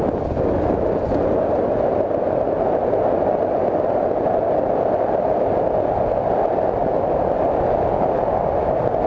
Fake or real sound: real